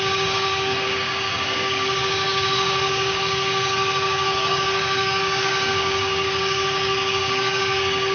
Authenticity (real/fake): fake